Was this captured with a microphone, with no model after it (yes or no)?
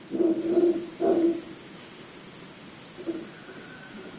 yes